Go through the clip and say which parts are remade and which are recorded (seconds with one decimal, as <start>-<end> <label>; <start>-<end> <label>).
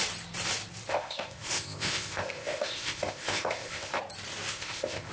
0.0-0.9 recorded; 0.9-4.0 remade; 4.0-4.5 recorded; 4.5-5.1 remade